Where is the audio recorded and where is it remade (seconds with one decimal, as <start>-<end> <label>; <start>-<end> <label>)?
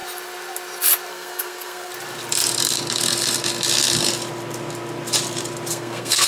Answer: 0.0-1.1 recorded; 1.1-1.9 remade; 1.9-5.7 recorded; 5.7-6.3 remade